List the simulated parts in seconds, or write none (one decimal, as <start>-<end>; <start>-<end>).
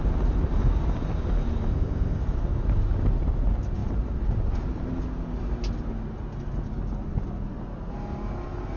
1.7-2.2